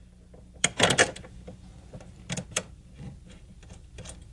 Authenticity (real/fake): fake